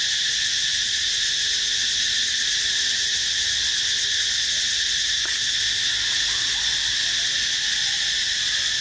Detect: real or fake real